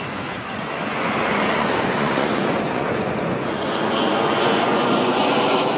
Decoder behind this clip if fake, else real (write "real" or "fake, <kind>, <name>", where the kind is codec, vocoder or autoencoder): fake, vocoder, Vocos